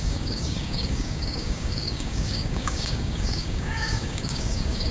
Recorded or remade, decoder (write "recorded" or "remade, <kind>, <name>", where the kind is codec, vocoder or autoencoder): remade, codec, DAC